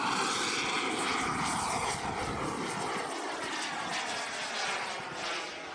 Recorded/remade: recorded